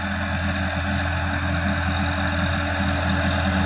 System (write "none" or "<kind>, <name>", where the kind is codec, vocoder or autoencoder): none